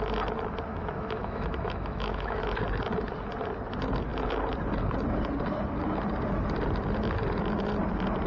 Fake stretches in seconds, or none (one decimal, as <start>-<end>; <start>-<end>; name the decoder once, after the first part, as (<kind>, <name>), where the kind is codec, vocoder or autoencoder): 0.7-2.4 (autoencoder, DAC-VAE)